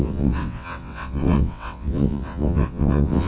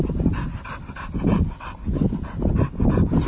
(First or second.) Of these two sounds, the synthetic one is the first